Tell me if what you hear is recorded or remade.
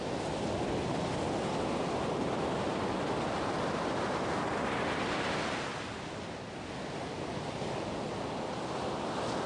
recorded